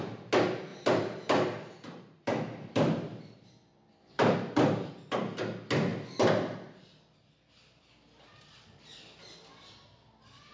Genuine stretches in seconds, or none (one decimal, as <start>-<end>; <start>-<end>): 0.0-0.7; 4.9-10.5